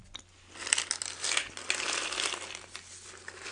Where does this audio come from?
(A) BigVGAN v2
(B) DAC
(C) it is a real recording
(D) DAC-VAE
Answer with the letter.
C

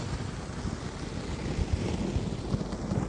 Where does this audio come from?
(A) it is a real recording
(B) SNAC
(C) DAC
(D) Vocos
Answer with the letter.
A